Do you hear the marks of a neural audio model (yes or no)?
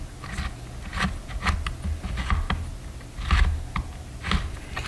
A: no